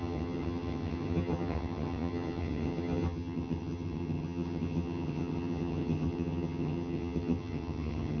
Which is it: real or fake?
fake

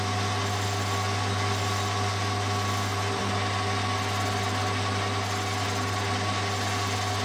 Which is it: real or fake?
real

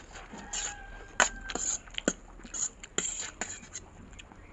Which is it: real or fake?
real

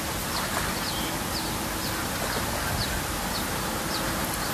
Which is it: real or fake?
real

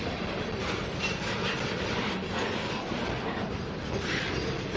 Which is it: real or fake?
real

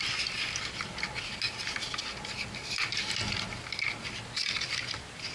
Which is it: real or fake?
real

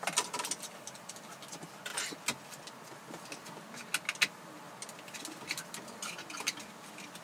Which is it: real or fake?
real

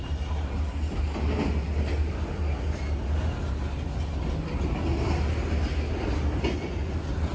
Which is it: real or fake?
real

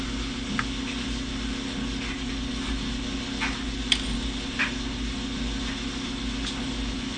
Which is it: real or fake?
real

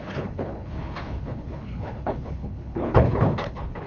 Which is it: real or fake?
fake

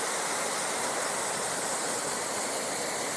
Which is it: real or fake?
real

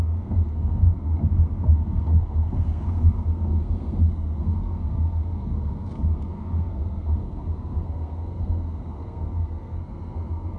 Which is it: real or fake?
fake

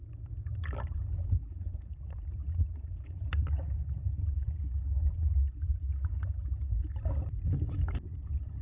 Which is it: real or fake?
real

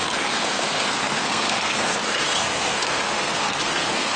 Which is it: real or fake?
fake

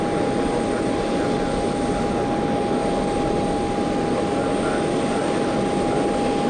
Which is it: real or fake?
real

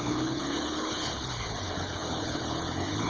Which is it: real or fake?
fake